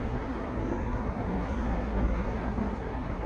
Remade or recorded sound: remade